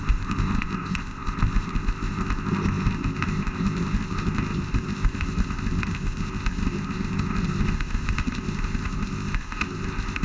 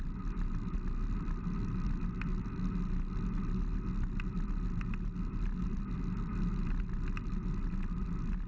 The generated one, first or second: first